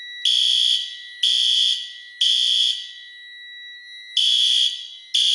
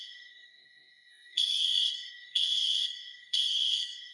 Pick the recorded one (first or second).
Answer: first